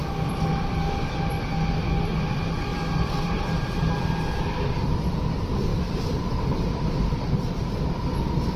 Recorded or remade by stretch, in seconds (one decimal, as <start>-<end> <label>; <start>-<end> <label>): 0.0-2.7 recorded; 2.7-4.0 remade; 4.0-5.7 recorded; 5.7-8.6 remade